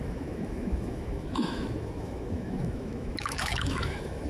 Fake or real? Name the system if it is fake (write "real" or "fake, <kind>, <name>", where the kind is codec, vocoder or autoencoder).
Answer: fake, autoencoder, DAC-VAE